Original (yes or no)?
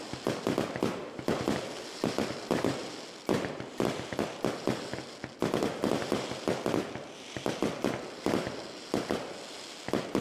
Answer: yes